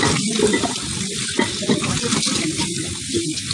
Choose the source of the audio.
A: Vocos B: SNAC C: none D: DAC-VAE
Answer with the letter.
C